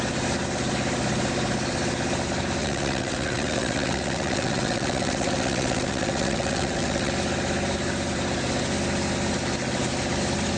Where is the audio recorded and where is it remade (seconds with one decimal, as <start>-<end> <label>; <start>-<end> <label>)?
0.0-2.6 recorded; 2.6-7.1 remade; 7.1-10.6 recorded